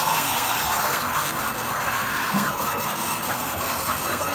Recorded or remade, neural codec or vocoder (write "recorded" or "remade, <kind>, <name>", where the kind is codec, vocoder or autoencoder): remade, codec, SNAC